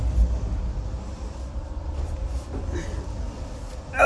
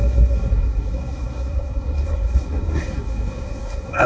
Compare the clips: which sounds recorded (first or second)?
first